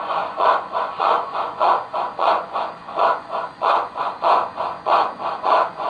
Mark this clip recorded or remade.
remade